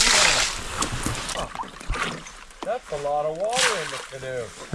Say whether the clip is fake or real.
real